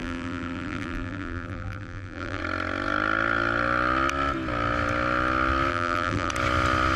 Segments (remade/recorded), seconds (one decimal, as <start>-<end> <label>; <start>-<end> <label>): 0.0-2.4 remade; 2.4-5.7 recorded; 5.7-6.3 remade; 6.3-7.0 recorded